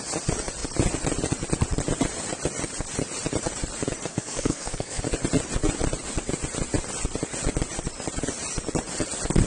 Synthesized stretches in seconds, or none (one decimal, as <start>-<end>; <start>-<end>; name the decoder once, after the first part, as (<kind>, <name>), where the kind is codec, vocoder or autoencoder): 4.1-5.0 (codec, SNAC)